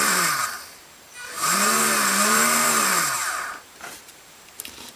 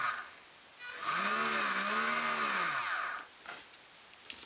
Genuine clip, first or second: second